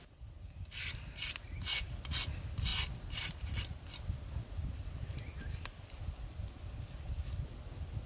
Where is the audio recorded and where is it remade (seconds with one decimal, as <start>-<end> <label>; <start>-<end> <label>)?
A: 0.0-8.1 recorded